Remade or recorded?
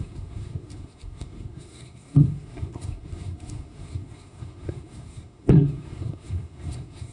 remade